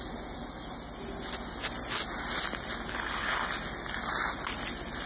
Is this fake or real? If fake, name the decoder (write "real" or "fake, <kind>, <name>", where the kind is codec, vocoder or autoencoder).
real